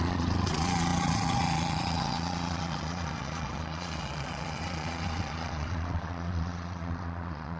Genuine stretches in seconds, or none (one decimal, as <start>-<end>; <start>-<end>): none